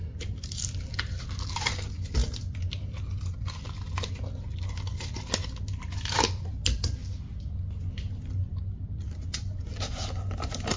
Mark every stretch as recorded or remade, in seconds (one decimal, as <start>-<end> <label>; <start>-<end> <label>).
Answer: 0.0-10.8 recorded